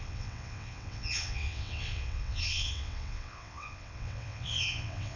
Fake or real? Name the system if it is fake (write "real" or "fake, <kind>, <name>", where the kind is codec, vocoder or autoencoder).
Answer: fake, vocoder, WaveNeXt